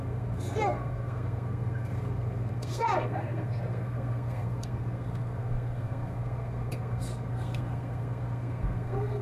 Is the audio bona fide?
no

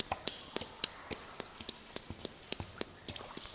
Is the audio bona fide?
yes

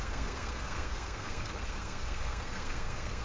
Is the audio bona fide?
no